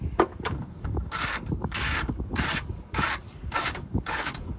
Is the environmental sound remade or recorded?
remade